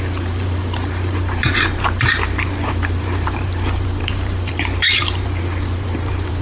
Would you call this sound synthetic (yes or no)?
yes